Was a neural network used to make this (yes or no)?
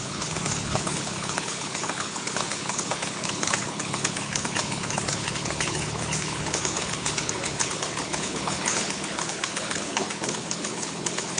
yes